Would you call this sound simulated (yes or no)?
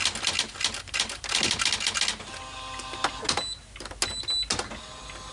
no